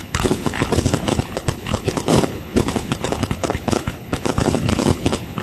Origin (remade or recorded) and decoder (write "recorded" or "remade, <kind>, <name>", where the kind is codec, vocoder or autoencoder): remade, codec, HILCodec